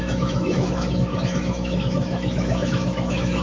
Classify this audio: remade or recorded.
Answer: remade